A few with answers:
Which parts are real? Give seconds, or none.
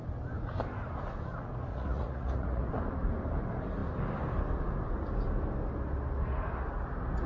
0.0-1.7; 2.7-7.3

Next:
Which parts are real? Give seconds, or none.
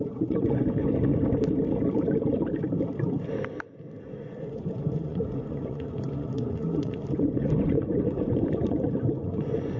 1.1-4.0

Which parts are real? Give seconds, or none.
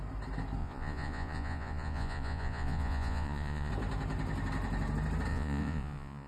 0.0-0.6; 3.7-5.3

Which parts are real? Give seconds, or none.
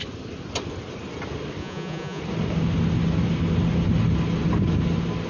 0.0-1.6; 2.2-5.3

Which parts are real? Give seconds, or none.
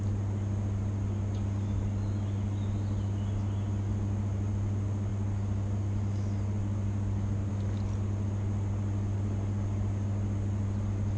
0.0-11.2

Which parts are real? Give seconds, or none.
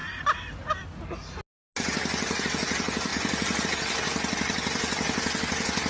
0.0-5.9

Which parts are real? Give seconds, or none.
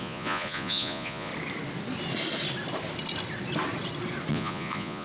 1.3-4.3